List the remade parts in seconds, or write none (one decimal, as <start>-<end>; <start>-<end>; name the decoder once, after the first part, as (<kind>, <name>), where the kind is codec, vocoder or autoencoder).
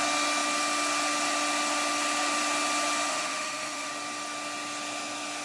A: 3.1-3.9 (autoencoder, DAC-VAE)